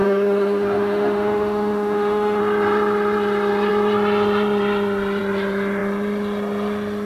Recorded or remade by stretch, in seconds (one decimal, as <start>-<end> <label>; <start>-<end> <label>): 0.0-2.4 remade; 2.4-7.1 recorded

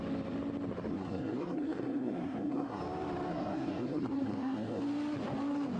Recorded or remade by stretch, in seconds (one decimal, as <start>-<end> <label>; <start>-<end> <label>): 0.0-0.9 recorded; 0.9-2.8 remade; 2.8-3.3 recorded; 3.3-4.8 remade; 4.8-5.8 recorded

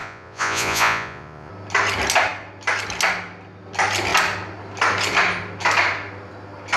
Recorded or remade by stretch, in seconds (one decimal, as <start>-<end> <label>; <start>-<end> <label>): 0.0-1.5 remade; 1.5-6.8 recorded